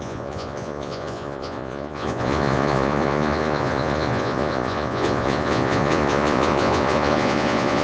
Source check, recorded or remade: remade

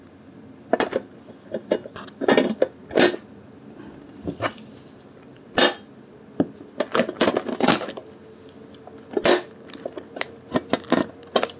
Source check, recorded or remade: recorded